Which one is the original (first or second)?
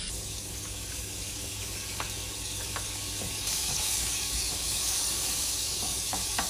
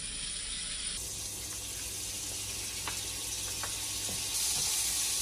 second